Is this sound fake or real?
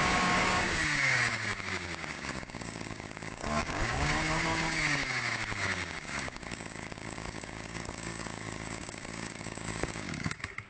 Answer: fake